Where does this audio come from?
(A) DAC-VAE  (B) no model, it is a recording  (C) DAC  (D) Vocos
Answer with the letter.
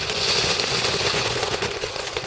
D